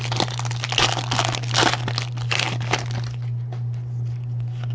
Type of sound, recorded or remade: recorded